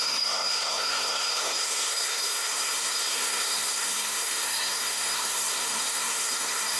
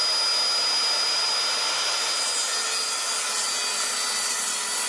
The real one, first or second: second